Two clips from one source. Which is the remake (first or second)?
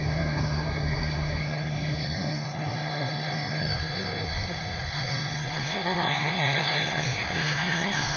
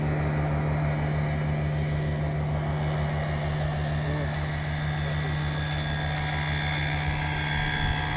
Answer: first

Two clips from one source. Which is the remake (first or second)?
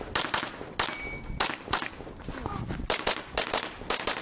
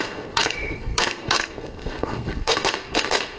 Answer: second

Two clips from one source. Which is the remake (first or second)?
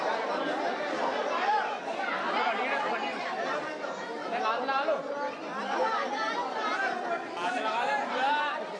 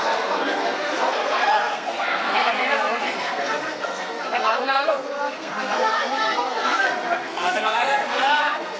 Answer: second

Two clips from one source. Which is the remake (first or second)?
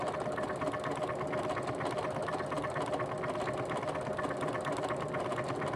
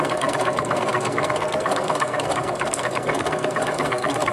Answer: second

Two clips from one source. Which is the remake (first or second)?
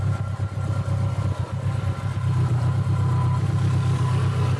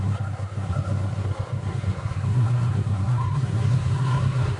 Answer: second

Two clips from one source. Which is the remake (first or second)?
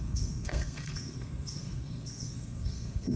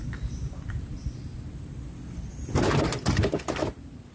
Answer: first